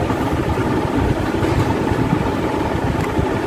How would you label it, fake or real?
fake